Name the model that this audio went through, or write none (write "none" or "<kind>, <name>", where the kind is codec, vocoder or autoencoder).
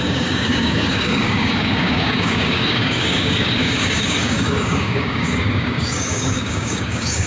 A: codec, DAC